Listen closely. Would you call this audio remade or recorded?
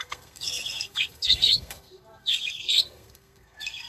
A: remade